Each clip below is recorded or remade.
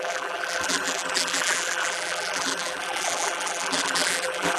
remade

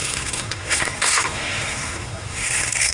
remade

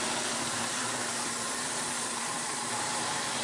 remade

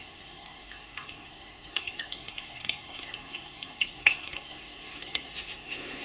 remade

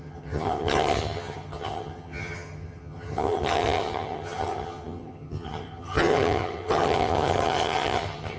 remade